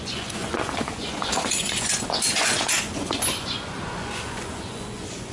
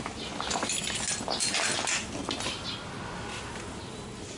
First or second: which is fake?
first